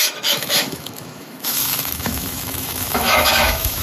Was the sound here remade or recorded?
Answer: remade